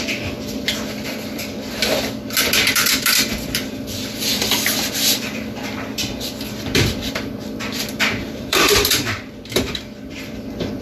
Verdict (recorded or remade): remade